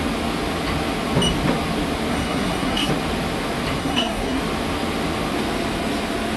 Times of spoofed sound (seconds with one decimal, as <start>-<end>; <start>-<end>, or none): 2.1-2.9; 3.8-4.4